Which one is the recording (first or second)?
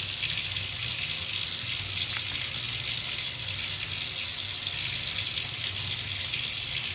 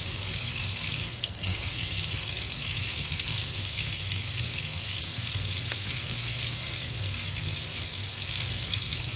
first